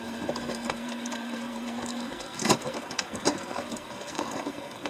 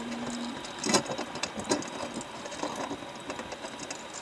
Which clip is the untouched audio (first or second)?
second